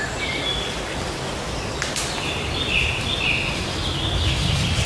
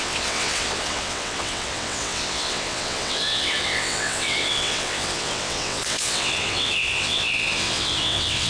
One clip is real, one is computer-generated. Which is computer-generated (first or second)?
second